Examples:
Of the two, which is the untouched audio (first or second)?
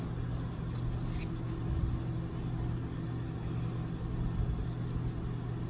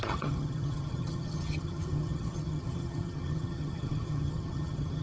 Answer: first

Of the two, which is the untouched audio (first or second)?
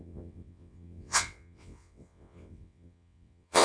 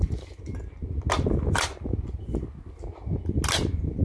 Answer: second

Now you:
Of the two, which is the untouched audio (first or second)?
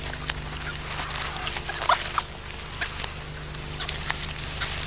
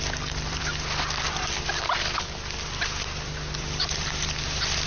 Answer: first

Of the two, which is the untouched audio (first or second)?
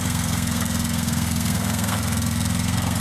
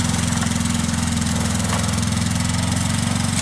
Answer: second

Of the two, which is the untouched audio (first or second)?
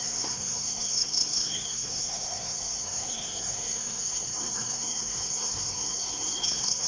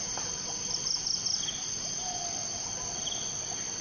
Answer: second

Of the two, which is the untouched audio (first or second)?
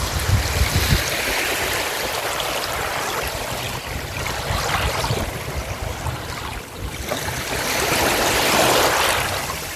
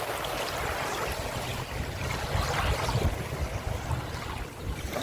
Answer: second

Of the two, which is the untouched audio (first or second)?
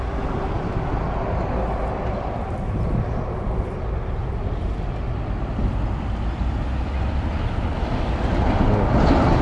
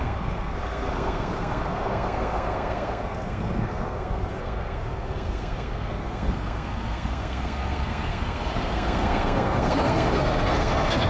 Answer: first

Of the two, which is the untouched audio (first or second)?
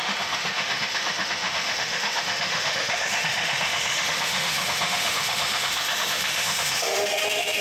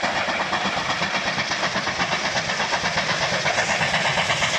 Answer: second